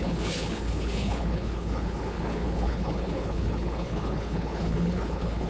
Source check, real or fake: fake